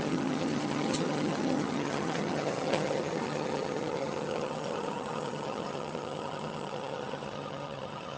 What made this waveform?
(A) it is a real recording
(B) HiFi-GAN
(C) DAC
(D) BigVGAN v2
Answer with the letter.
B